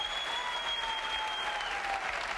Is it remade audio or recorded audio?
recorded